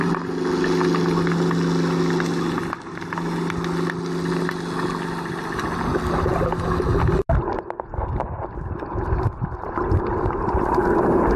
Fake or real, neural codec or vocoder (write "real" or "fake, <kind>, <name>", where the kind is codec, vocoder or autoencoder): real